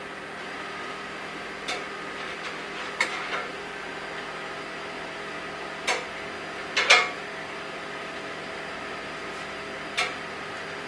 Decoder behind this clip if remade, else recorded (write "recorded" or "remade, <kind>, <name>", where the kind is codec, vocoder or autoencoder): recorded